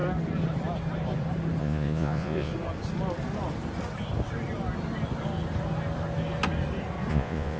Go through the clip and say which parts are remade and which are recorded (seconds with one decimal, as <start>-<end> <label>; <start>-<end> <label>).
0.0-1.6 recorded; 1.6-2.5 remade; 2.5-7.1 recorded; 7.1-7.6 remade